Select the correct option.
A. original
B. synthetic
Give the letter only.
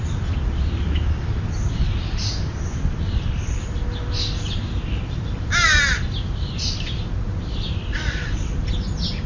A